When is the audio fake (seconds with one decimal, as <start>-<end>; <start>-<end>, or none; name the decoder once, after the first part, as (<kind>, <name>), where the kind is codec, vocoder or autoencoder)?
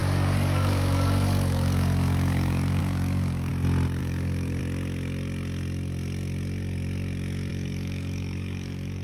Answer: 0.0-3.5 (codec, DAC); 4.0-4.6; 7.5-9.0